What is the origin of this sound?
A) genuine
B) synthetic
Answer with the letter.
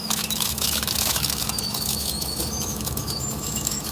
B